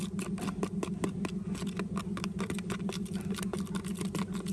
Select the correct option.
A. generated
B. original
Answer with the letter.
B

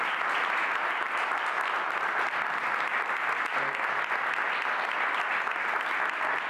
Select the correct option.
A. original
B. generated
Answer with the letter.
A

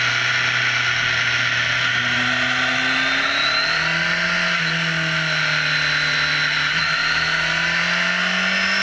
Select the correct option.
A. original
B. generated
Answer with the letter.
A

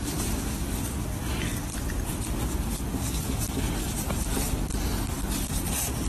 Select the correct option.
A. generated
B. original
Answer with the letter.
B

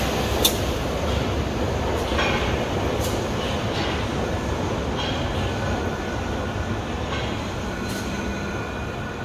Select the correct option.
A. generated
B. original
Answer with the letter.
B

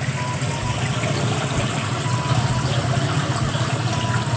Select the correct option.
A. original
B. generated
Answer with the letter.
A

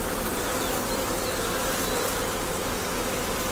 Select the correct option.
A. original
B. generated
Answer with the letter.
A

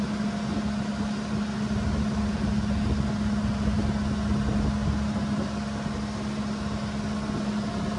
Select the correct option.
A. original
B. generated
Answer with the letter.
A